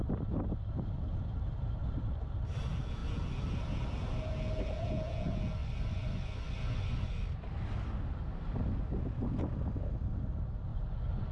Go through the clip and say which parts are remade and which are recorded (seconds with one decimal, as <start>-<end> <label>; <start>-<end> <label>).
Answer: 0.0-5.6 recorded; 5.6-7.1 remade; 7.1-10.7 recorded; 10.7-11.3 remade